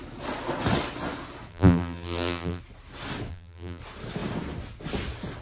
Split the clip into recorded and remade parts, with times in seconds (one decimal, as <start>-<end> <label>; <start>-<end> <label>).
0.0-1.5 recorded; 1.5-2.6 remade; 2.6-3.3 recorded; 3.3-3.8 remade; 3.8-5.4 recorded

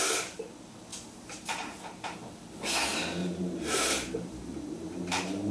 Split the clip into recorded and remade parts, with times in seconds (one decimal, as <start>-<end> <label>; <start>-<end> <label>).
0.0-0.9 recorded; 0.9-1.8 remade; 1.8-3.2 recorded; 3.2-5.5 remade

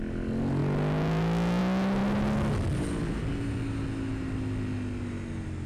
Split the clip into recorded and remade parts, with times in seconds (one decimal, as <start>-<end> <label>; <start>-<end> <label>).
0.0-5.7 recorded

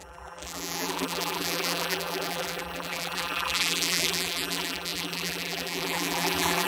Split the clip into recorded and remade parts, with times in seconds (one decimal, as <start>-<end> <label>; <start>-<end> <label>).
0.0-6.7 remade

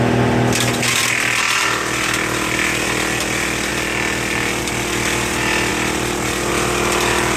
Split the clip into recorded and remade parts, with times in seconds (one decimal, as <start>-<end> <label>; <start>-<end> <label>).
0.0-7.4 recorded

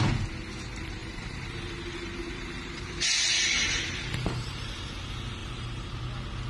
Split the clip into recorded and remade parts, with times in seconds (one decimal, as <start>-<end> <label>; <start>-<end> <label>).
0.0-1.0 recorded; 1.0-4.9 remade; 4.9-5.4 recorded; 5.4-6.0 remade; 6.0-6.5 recorded